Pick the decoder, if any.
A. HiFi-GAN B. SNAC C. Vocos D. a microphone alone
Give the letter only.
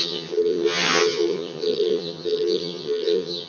A